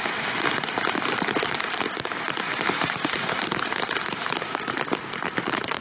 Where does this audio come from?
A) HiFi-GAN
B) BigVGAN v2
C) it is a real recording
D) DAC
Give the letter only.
C